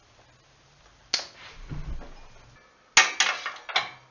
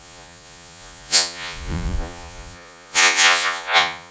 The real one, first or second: first